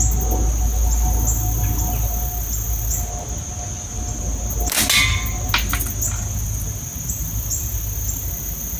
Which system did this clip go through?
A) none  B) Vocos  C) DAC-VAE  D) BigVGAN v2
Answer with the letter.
A